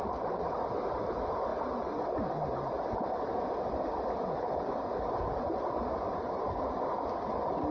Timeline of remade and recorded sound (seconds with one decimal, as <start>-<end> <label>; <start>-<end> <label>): 0.0-7.7 recorded